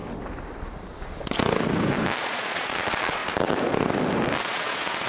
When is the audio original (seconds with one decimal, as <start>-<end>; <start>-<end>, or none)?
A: 0.0-2.2; 3.2-4.4